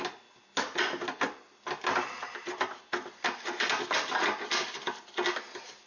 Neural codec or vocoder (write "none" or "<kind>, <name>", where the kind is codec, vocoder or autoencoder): none